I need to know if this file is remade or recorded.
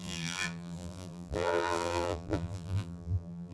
remade